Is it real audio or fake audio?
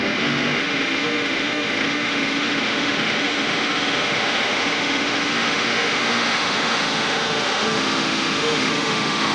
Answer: fake